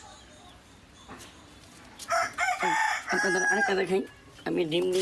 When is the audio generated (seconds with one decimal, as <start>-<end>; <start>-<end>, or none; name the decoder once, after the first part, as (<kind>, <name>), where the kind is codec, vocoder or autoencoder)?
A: none